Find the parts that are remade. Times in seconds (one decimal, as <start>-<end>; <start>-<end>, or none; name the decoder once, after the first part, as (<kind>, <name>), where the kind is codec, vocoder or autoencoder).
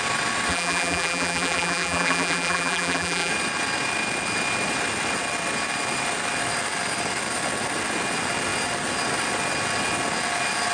0.5-3.3 (vocoder, BigVGAN v2)